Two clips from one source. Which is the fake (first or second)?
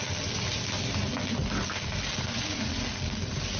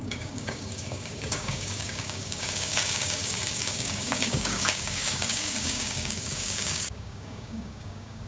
second